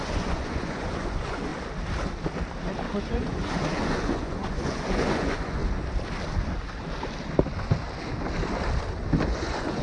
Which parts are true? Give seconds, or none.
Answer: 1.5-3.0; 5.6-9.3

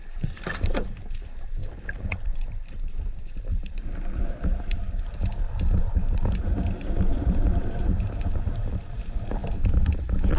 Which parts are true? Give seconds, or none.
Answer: 9.4-10.4

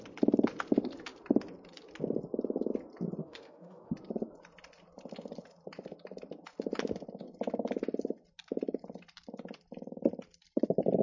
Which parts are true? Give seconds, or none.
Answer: 0.0-3.2; 3.9-11.0

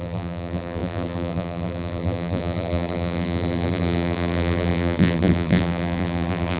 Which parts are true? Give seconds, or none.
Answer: none

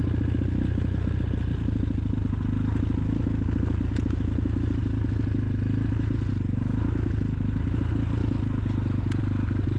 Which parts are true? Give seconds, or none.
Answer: 0.0-9.8